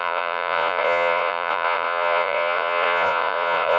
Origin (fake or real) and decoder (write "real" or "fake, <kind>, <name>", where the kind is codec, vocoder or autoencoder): fake, vocoder, Vocos